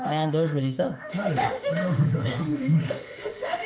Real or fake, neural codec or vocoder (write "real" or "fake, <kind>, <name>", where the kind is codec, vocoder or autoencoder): fake, autoencoder, DAC-VAE